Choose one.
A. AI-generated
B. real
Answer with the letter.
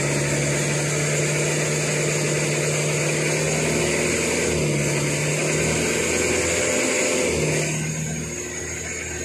B